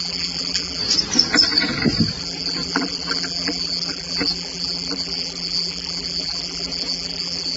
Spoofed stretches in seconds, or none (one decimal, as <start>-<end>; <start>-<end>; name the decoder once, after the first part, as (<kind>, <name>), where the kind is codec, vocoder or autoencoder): 0.0-0.8 (vocoder, BigVGAN v2); 2.2-7.6

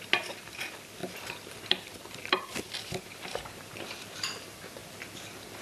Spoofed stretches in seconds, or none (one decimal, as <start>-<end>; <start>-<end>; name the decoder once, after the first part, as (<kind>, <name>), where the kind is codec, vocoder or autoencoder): 0.0-4.8 (vocoder, BigVGAN v2)

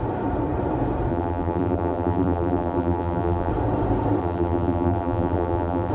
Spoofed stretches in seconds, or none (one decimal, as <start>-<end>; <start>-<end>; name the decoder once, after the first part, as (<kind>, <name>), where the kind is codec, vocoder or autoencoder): 1.1-3.5 (vocoder, BigVGAN v2); 4.2-5.9

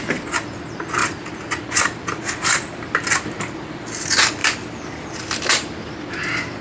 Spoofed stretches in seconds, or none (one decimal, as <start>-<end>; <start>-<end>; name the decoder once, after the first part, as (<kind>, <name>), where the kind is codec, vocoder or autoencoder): 1.0-3.5 (vocoder, BigVGAN v2); 4.4-6.1

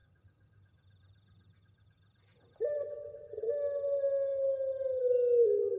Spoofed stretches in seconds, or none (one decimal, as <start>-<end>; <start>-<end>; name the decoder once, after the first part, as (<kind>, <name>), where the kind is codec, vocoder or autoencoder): 0.0-3.5 (vocoder, BigVGAN v2)

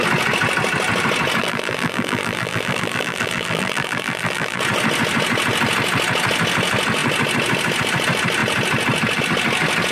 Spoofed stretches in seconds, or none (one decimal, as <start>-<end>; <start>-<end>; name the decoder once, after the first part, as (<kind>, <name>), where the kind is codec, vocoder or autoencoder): 1.4-4.6 (vocoder, BigVGAN v2)

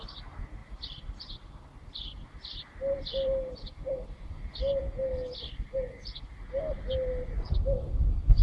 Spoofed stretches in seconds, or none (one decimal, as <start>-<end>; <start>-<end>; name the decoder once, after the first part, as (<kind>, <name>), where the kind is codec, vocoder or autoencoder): 0.6-4.3 (vocoder, BigVGAN v2)

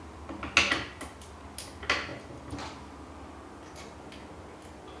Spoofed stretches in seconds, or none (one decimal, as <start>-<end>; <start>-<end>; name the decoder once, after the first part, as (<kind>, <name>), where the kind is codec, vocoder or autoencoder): none